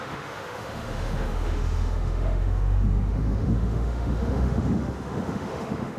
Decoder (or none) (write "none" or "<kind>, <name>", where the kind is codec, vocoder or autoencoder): autoencoder, DAC-VAE